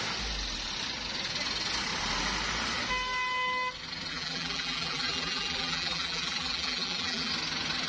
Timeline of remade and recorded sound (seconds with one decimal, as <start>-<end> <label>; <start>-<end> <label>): 0.0-4.1 recorded; 4.1-7.3 remade; 7.3-7.9 recorded